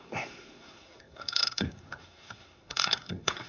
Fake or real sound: fake